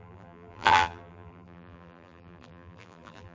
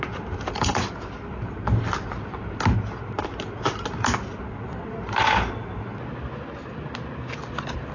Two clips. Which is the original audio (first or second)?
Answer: second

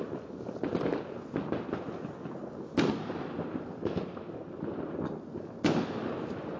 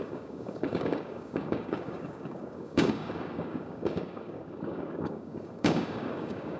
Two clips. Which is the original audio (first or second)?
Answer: first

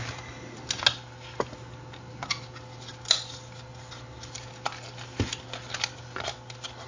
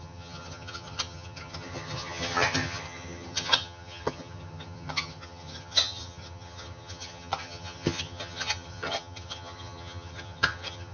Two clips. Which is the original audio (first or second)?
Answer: first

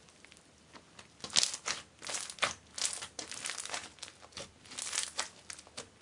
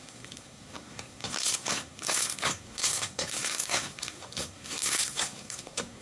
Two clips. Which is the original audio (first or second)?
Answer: first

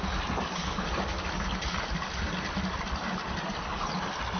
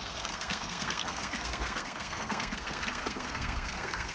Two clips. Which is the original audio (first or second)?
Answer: first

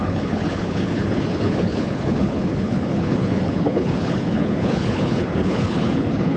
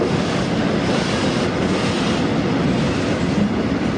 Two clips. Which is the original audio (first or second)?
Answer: second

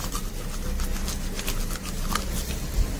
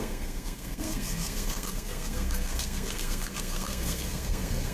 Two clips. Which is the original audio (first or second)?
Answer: first